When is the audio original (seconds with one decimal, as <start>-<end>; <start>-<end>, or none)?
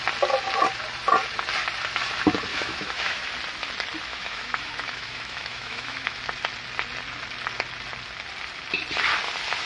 0.0-2.5; 3.3-4.1; 6.2-9.7